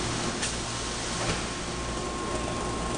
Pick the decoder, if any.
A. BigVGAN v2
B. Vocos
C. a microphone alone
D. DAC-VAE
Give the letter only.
C